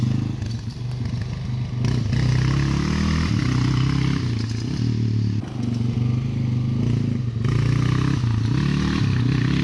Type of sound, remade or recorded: recorded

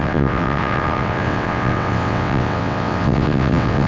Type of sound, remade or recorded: remade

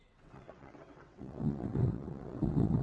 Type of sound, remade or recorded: remade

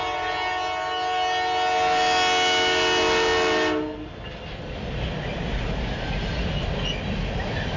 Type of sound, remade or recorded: recorded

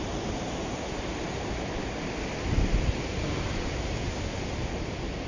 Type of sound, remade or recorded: recorded